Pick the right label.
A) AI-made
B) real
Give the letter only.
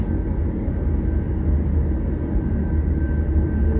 B